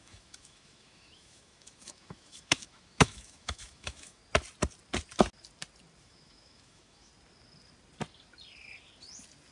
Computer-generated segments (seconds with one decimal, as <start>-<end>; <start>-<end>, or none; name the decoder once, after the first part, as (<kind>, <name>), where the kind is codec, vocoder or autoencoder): 0.0-4.2 (autoencoder, DAC-VAE); 6.0-7.1